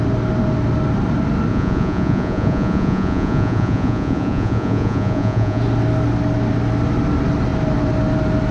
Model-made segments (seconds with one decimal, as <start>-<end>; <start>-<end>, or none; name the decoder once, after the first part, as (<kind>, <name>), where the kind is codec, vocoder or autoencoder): 1.5-5.6 (vocoder, Vocos)